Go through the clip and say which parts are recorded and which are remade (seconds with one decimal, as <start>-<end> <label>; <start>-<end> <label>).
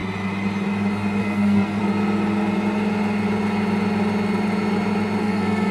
0.0-1.2 recorded; 1.2-1.8 remade; 1.8-5.2 recorded; 5.2-5.7 remade